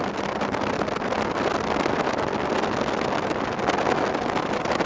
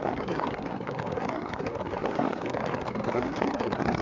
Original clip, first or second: first